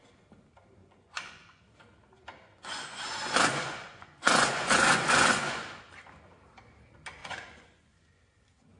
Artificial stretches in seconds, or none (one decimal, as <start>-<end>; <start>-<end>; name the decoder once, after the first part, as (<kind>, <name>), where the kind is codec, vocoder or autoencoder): 0.8-1.6 (vocoder, Vocos); 2.4-5.8; 7.2-8.2